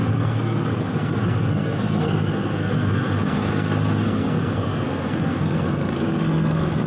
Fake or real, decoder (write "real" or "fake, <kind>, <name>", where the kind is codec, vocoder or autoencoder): fake, codec, SNAC